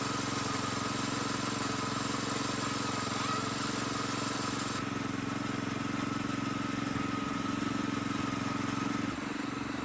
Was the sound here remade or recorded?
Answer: recorded